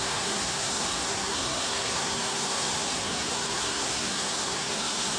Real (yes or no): no